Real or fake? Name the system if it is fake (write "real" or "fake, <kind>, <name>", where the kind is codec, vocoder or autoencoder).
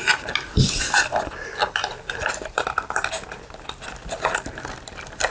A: real